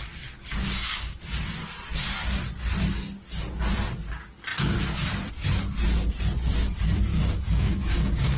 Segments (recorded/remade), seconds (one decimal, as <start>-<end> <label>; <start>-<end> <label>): 0.0-0.6 recorded; 0.6-1.2 remade; 1.2-7.1 recorded; 7.1-8.4 remade